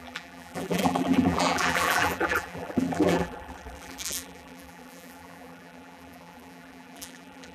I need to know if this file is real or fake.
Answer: fake